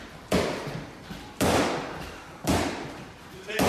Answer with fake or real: real